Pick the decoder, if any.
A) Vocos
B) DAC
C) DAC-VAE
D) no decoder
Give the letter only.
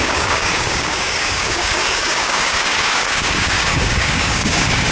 B